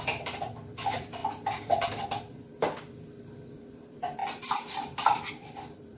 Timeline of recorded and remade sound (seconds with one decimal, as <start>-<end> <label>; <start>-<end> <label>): 0.0-6.0 remade